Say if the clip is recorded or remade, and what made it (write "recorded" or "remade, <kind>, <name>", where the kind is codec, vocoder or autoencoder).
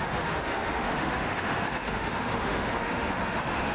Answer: remade, autoencoder, DAC-VAE